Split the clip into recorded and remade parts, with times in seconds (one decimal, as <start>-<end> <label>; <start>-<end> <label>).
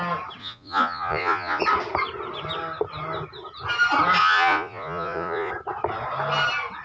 0.0-0.4 recorded; 0.4-1.6 remade; 1.6-4.2 recorded; 4.2-5.5 remade; 5.5-6.8 recorded